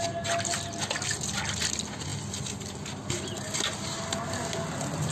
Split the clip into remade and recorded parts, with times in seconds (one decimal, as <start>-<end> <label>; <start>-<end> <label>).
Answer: 0.0-5.1 recorded